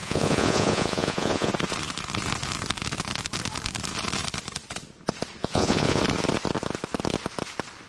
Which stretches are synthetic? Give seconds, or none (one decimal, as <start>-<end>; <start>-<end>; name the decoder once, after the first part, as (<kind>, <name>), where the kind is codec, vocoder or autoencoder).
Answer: 0.0-1.5 (vocoder, Vocos); 5.4-6.0